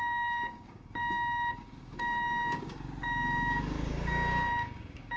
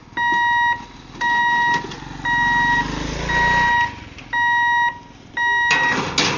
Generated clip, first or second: first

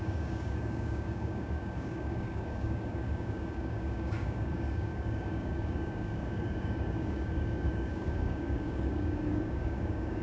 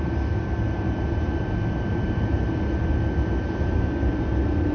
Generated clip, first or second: first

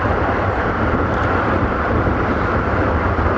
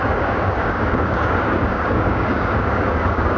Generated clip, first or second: second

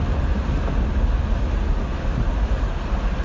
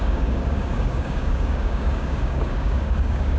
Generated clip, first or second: second